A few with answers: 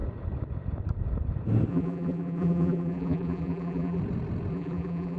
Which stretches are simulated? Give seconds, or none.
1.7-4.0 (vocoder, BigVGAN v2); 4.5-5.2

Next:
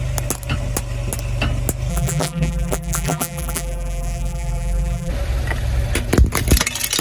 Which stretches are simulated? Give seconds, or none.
1.9-5.1 (vocoder, BigVGAN v2)

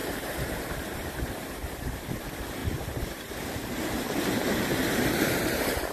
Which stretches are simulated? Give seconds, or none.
0.0-5.9 (vocoder, BigVGAN v2)

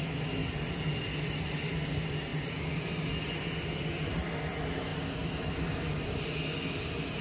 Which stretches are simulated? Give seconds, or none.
4.9-6.3 (vocoder, BigVGAN v2)

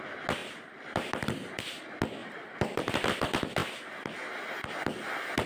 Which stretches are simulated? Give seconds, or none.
0.4-1.1 (vocoder, BigVGAN v2); 2.2-2.9

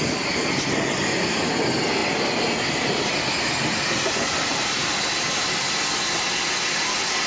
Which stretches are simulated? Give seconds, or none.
none

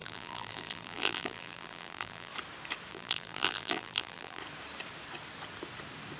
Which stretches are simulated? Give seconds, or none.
0.0-2.3 (vocoder, BigVGAN v2); 2.9-4.4

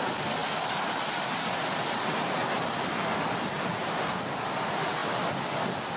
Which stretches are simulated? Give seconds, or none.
0.0-0.4 (vocoder, BigVGAN v2); 1.9-2.4; 4.0-5.0